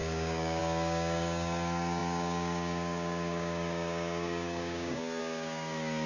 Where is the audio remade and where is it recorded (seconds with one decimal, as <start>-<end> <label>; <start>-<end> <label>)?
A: 0.0-6.1 remade